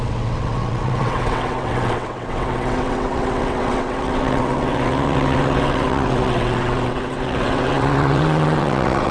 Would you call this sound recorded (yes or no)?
no